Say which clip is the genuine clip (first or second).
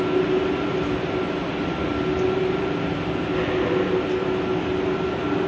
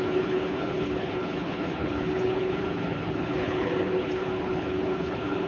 first